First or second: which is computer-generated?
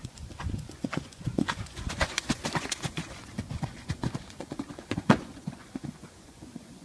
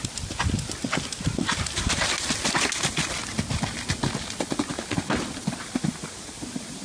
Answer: first